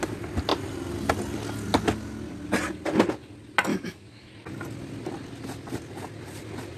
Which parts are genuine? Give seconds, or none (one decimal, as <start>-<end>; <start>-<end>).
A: 0.0-3.7; 4.3-6.8